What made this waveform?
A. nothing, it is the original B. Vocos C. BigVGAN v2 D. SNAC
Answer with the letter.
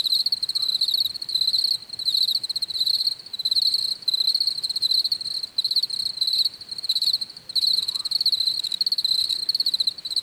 A